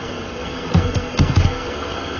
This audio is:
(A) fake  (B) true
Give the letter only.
A